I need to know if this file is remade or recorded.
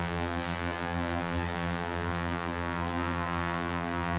remade